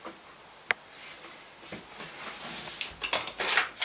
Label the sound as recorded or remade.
recorded